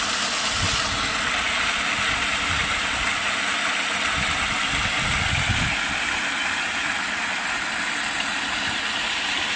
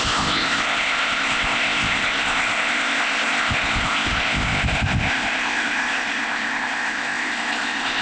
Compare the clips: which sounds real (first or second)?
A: first